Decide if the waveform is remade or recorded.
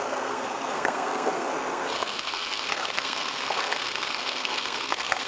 remade